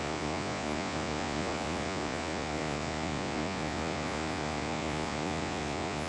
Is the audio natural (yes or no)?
no